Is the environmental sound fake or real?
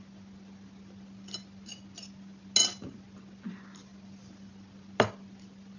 real